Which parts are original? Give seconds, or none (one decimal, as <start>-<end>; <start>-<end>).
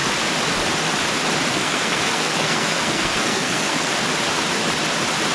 0.0-1.5; 3.9-5.3